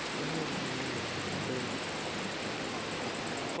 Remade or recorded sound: recorded